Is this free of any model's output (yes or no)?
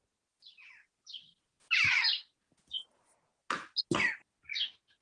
yes